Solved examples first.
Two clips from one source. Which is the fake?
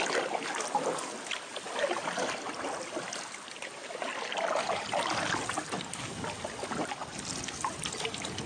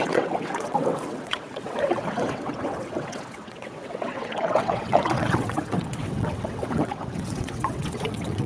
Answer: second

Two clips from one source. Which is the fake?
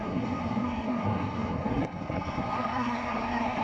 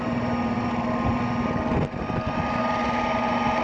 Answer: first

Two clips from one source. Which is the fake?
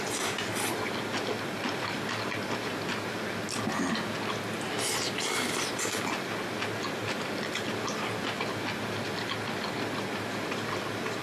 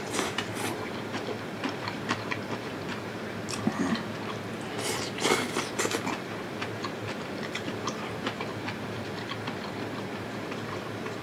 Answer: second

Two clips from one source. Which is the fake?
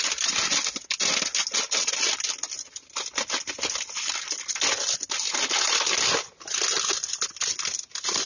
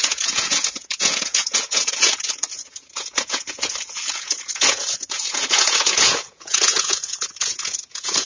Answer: second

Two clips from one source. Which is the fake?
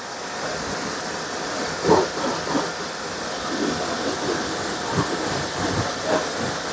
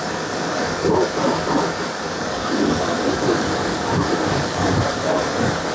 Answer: second